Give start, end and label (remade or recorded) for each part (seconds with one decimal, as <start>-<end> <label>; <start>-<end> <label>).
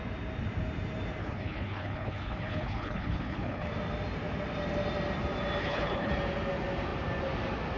0.0-1.2 recorded; 1.2-3.7 remade; 3.7-5.6 recorded; 5.6-6.1 remade; 6.1-7.8 recorded